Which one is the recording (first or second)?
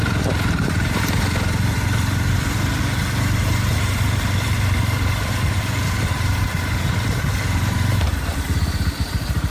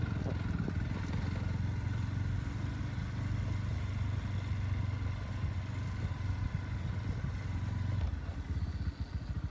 second